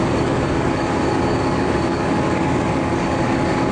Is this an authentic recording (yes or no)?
no